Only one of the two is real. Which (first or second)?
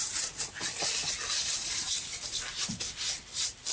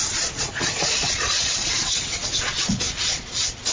first